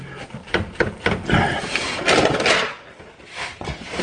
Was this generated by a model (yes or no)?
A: no